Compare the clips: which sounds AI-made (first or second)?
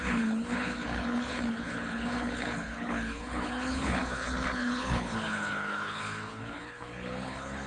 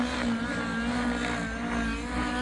first